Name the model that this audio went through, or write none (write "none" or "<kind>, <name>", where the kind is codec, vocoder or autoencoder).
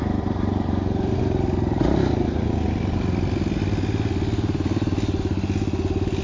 none